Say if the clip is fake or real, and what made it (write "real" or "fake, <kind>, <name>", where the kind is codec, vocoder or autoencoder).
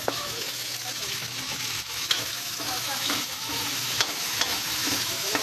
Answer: fake, autoencoder, DAC-VAE